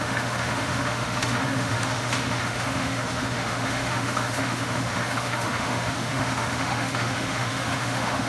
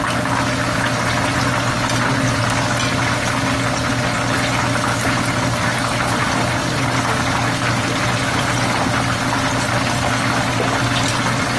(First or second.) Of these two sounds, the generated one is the first